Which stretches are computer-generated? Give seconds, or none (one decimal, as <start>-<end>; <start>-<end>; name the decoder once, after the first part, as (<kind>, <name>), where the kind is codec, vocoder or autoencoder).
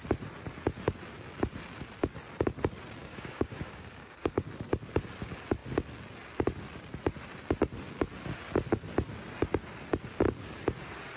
3.0-4.4 (codec, DAC)